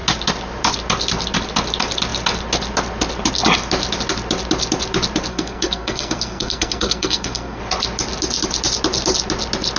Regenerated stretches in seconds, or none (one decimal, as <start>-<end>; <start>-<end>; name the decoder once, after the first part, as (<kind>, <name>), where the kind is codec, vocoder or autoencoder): 5.3-7.6 (codec, SNAC)

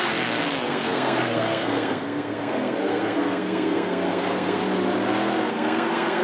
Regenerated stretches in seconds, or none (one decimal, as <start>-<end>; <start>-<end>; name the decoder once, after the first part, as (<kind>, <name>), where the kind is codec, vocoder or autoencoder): 0.0-4.6 (codec, SNAC); 5.5-6.2

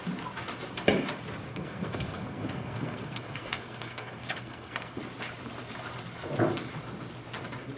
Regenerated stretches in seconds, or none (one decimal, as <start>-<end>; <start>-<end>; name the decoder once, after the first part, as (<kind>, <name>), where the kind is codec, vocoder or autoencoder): 1.5-5.0 (codec, SNAC)

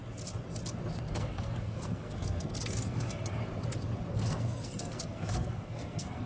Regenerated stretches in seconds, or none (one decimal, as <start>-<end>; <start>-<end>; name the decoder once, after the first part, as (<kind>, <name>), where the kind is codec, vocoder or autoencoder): 1.1-3.4 (codec, SNAC); 4.1-6.3

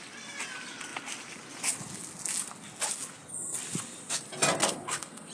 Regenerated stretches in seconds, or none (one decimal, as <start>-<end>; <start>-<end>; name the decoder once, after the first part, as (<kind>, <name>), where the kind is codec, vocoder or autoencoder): 4.6-5.3 (codec, SNAC)

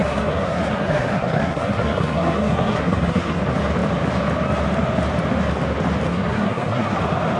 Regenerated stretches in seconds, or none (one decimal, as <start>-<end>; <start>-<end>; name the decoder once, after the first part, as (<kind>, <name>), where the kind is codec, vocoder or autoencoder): 0.0-3.4 (codec, SNAC); 6.1-7.0